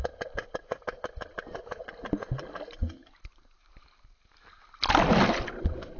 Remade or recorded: recorded